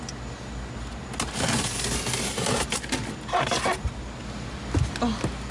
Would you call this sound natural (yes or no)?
yes